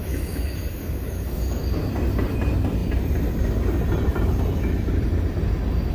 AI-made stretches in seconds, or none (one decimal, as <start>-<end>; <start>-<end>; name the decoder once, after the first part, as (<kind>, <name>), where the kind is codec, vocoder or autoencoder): 0.0-1.8 (codec, DAC)